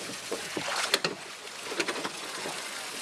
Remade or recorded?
remade